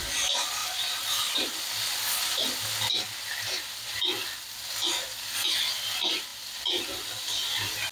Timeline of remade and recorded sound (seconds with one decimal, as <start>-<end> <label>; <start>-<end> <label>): 0.0-0.6 recorded; 0.6-1.7 remade; 1.7-7.9 recorded